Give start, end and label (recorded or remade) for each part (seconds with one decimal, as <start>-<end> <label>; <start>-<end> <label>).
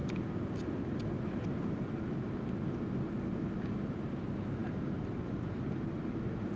0.0-6.6 recorded